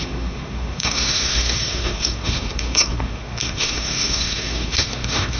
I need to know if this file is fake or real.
fake